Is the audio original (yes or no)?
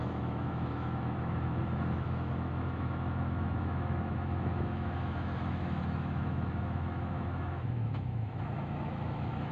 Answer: no